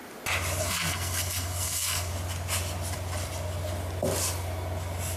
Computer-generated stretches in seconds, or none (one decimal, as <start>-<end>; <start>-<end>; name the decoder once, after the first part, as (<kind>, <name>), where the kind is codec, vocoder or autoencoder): 0.6-2.1 (codec, SNAC)